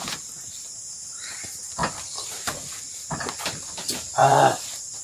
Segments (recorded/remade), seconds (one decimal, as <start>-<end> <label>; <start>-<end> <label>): 0.0-0.4 recorded; 0.4-1.1 remade; 1.1-4.2 recorded; 4.2-5.0 remade